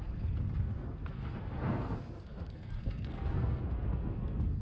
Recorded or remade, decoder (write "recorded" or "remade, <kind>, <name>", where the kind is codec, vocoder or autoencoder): remade, codec, SNAC